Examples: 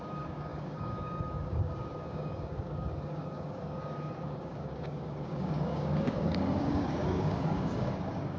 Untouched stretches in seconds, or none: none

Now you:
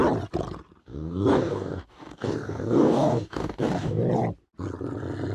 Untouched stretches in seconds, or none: 0.0-0.8; 4.0-5.3

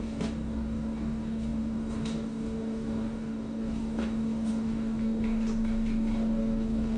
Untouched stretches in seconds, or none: none

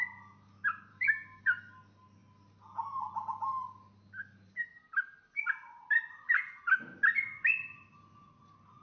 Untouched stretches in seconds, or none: 0.0-0.9; 1.4-8.8